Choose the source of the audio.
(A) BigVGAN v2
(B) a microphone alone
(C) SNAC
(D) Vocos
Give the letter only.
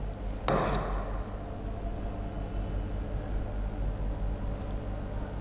B